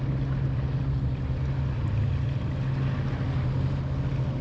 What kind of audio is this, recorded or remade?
recorded